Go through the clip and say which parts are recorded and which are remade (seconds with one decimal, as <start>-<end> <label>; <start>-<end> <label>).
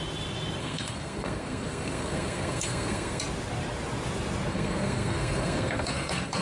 0.0-0.6 recorded; 0.6-3.2 remade; 3.2-4.5 recorded; 4.5-6.4 remade